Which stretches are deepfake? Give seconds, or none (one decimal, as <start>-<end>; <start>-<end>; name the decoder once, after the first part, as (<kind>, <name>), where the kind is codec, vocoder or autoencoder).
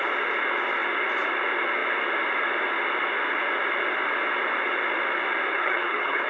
5.5-6.3 (codec, HILCodec)